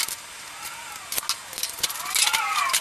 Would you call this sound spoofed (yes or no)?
no